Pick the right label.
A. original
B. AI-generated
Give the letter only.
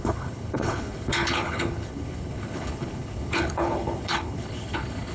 B